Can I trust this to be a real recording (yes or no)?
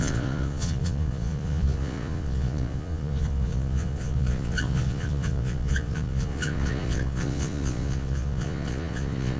no